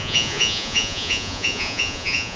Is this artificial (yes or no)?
yes